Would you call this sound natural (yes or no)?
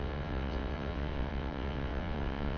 no